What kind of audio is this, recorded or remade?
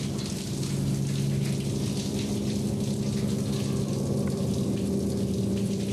recorded